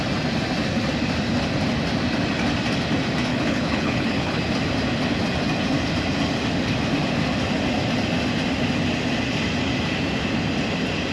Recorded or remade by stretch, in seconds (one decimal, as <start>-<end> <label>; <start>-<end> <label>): 0.0-3.3 recorded; 3.3-4.4 remade; 4.4-11.1 recorded